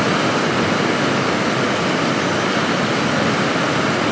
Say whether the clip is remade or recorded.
recorded